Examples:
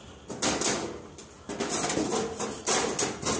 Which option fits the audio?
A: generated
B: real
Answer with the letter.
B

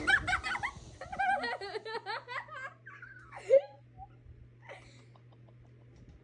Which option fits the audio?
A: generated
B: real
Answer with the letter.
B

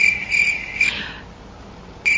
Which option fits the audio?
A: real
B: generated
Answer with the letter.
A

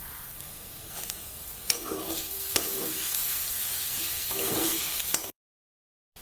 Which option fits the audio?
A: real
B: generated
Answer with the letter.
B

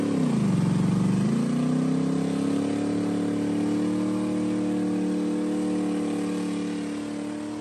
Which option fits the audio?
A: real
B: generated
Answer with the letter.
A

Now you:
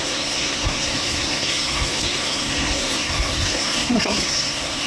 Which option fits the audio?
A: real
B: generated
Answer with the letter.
B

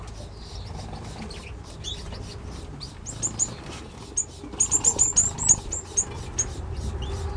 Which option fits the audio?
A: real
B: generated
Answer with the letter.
A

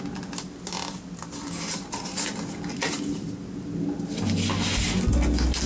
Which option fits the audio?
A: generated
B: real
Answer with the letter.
B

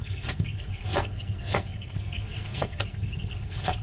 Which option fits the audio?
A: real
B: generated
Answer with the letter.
B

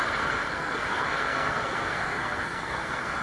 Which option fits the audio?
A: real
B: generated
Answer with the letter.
B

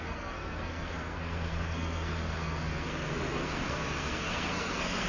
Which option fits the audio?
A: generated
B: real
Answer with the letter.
A